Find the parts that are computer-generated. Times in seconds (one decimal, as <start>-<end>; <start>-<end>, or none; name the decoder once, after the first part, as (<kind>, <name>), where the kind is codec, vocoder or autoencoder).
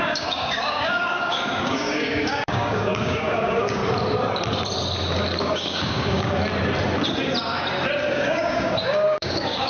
0.0-3.8 (codec, DAC); 5.4-6.4; 8.1-9.7